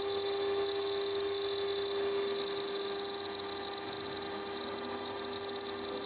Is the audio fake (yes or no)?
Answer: no